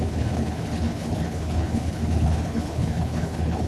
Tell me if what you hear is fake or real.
fake